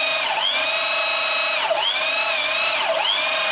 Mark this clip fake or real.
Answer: real